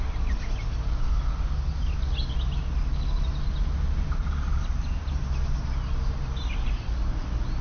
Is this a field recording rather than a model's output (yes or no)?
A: yes